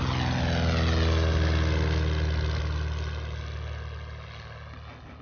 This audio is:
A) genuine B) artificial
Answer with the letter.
A